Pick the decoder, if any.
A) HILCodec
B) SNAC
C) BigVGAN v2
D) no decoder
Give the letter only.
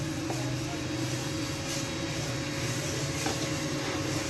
D